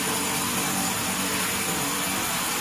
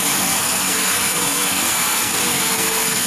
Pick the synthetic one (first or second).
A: second